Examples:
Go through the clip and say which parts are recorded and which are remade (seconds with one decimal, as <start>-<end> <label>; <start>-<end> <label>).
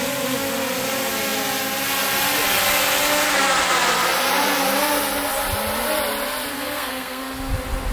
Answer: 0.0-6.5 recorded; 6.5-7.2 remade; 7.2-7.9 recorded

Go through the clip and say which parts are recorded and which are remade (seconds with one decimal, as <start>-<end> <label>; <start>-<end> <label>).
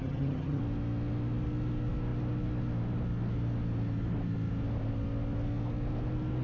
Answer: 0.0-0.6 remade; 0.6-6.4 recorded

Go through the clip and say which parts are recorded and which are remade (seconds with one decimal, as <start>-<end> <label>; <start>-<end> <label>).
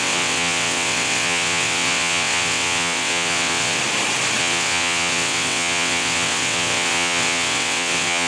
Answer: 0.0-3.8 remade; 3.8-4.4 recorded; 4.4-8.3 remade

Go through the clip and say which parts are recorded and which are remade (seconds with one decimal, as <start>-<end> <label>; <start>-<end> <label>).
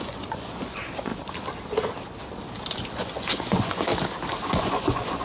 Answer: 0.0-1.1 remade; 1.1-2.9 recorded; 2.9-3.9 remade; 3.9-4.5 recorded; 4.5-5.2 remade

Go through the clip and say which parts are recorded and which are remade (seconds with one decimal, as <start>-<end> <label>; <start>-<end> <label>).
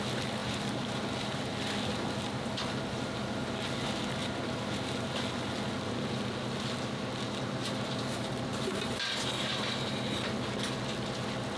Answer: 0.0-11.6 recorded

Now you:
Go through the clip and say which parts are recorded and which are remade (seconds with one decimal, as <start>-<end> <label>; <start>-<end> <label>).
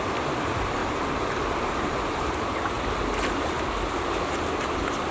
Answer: 0.0-5.1 recorded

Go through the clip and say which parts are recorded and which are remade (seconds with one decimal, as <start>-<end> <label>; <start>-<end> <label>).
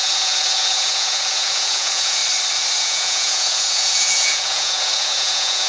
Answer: 0.0-2.2 remade; 2.2-2.8 recorded; 2.8-5.7 remade